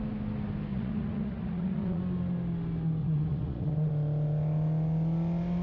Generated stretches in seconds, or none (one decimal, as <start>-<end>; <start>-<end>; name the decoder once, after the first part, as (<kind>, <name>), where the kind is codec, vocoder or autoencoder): 0.7-2.0 (vocoder, Vocos); 3.0-3.9